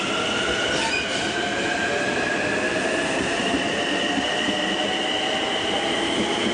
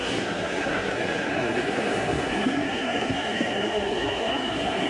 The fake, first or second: second